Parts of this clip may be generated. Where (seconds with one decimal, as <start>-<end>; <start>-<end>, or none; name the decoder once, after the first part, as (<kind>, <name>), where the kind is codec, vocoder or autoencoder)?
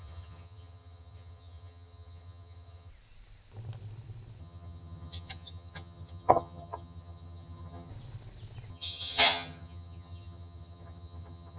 0.0-2.9 (vocoder, HiFi-GAN); 4.4-7.9; 8.7-11.6